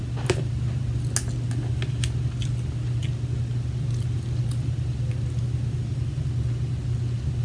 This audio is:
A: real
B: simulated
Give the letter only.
A